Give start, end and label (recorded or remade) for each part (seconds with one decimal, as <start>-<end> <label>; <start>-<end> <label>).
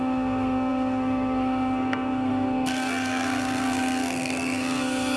0.0-5.2 remade